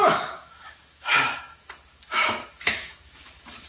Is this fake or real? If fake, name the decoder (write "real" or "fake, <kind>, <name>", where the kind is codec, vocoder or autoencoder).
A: fake, autoencoder, DAC-VAE